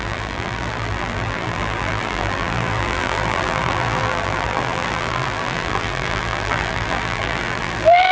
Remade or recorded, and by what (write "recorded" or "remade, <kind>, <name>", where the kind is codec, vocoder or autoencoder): remade, vocoder, BigVGAN v2